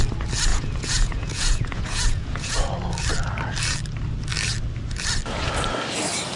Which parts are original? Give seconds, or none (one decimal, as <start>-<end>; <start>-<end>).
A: 0.0-0.5; 2.7-6.4